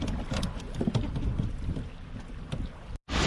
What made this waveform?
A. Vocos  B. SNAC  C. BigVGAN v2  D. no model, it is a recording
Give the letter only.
D